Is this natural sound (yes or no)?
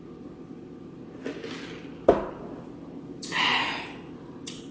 yes